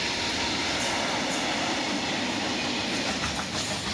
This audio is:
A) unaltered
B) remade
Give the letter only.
A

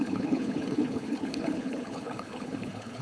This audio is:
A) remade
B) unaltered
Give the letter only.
A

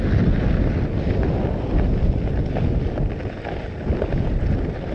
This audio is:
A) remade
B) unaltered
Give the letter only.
B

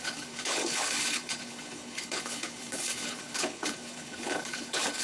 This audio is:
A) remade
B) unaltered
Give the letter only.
A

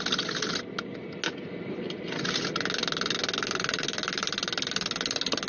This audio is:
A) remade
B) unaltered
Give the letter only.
B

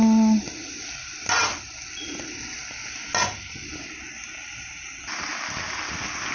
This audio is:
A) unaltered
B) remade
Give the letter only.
A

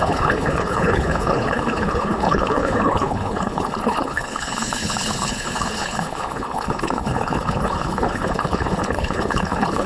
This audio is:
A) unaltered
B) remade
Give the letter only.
B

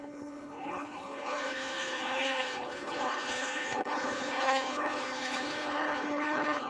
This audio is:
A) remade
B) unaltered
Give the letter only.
A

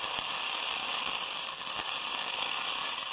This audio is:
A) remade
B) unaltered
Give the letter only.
B